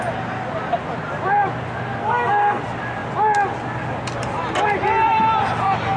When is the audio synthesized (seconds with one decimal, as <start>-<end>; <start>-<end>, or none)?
2.0-2.6